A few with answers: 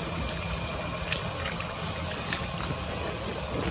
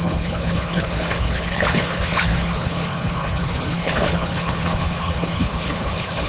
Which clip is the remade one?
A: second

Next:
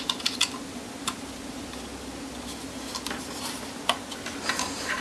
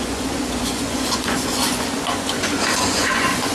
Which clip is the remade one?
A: second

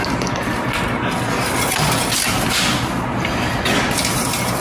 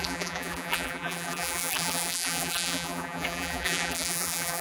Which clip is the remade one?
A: second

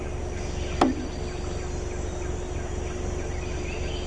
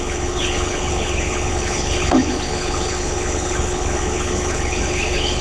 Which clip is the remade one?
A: second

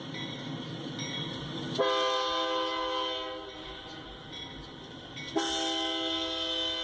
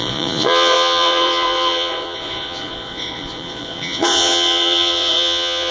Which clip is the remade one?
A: second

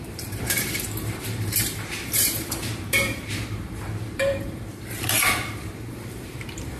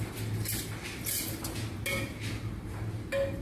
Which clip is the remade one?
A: first